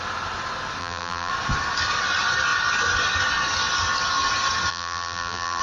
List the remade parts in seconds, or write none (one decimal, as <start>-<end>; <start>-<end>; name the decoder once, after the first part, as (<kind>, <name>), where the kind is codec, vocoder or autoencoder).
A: 0.8-1.3 (vocoder, BigVGAN v2); 4.7-5.6